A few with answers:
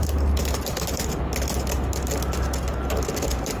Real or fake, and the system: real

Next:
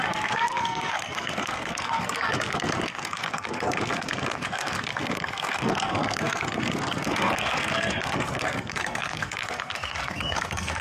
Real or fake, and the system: fake, codec, SNAC